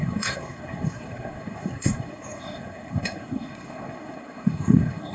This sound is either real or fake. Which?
fake